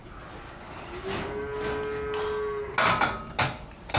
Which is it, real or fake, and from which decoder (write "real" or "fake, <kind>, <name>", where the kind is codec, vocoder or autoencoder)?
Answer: real